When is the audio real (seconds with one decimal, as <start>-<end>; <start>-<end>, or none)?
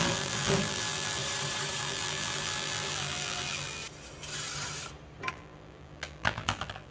1.2-1.8; 3.8-5.3